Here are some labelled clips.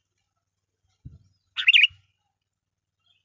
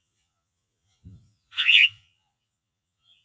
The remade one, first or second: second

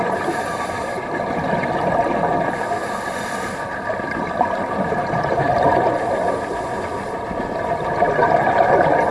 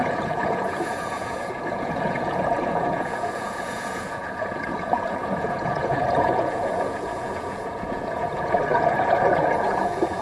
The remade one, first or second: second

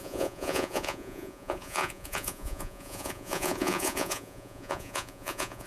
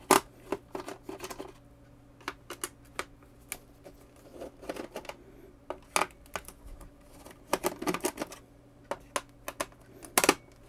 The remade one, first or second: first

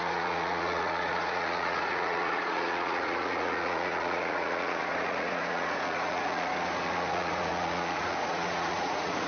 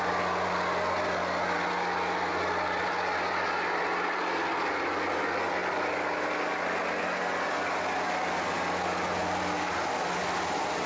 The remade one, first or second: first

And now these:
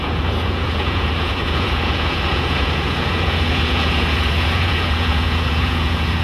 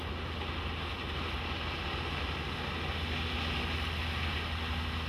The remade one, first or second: first